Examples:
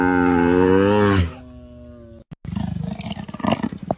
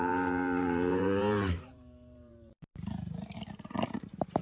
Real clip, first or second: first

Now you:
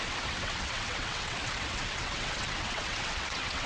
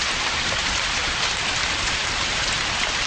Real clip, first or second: second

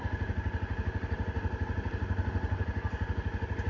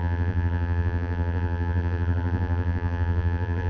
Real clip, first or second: first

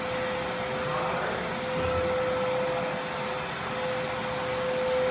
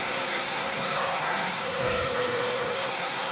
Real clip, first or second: first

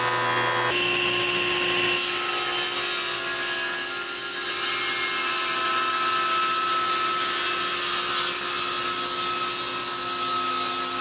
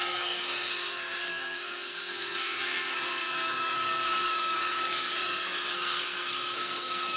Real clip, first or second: first